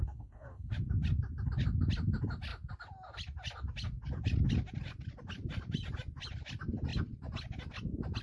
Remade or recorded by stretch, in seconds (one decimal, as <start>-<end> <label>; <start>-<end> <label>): 0.0-0.7 remade; 0.7-8.2 recorded